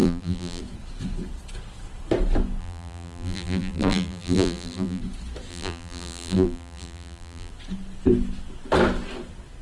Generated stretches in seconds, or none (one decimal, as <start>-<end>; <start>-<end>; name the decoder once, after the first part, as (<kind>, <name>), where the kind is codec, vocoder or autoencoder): 0.0-0.6 (vocoder, BigVGAN v2); 2.6-5.0; 5.5-7.5